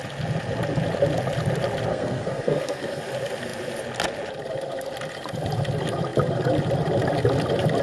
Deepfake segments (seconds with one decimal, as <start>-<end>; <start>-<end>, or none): 1.9-3.0